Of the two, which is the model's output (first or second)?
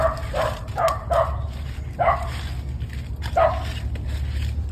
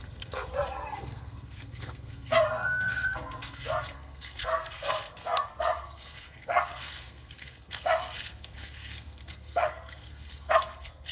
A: second